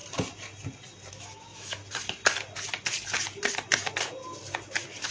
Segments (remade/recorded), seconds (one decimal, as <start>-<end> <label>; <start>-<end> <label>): 0.0-1.1 recorded; 1.1-1.8 remade; 1.8-5.1 recorded